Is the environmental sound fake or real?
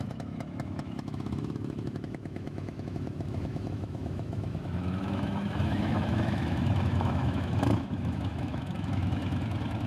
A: fake